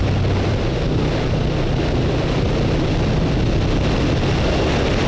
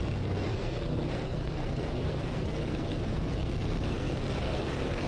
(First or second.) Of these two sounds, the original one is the first